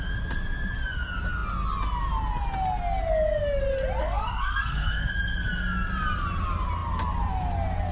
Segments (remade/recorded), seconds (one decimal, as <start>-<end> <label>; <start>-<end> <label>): 0.0-4.0 recorded; 4.0-5.1 remade; 5.1-7.9 recorded